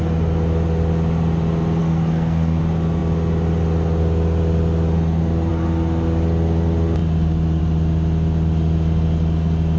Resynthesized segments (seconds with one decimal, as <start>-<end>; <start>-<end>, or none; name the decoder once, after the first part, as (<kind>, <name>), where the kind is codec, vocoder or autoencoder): 1.8-2.6 (codec, SNAC)